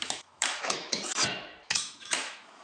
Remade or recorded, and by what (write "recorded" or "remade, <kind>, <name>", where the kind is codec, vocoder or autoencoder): remade, autoencoder, DAC-VAE